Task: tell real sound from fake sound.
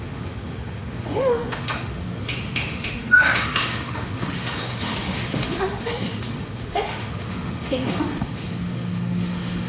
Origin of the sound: fake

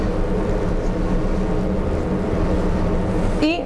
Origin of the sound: real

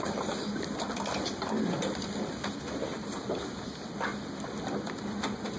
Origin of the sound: real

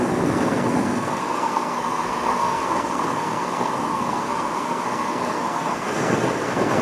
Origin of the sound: fake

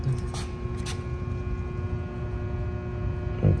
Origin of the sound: real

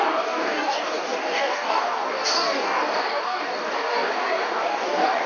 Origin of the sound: fake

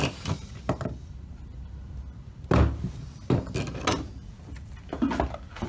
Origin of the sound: real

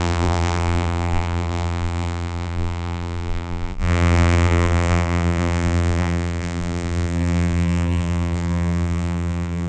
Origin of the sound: fake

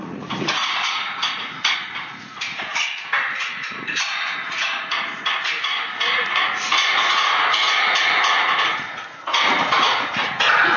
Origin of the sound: fake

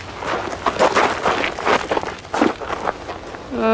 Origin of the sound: real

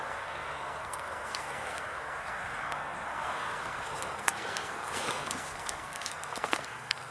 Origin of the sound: fake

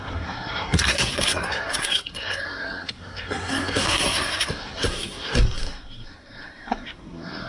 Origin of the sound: fake